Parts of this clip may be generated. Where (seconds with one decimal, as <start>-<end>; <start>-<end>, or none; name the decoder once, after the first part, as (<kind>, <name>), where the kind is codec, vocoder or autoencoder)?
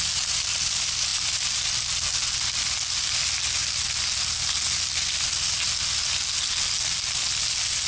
none